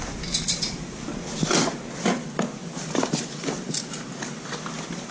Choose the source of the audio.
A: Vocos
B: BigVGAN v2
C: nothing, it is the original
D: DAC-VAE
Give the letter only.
C